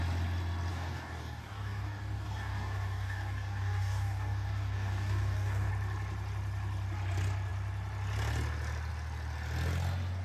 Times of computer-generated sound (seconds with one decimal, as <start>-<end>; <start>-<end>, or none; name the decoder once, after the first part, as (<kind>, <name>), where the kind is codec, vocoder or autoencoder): 0.7-5.7 (codec, DAC)